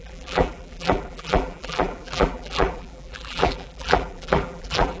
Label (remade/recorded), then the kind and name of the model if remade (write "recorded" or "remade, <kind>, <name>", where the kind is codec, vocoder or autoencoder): remade, vocoder, BigVGAN v2